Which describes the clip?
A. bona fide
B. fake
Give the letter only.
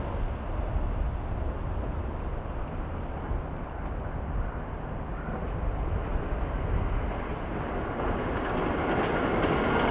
A